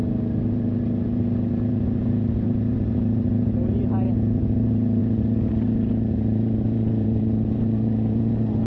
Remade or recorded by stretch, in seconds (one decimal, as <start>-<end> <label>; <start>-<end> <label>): 0.0-5.0 remade; 5.0-6.1 recorded; 6.1-8.7 remade